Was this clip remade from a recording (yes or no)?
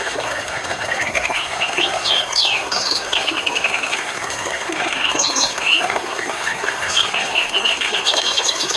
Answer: yes